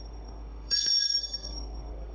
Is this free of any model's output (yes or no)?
no